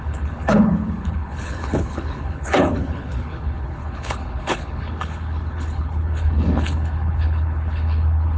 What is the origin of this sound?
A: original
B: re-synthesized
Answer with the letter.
B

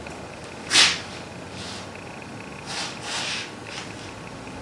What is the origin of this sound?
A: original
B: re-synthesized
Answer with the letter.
A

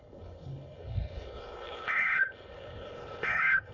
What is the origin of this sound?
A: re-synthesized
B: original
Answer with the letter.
A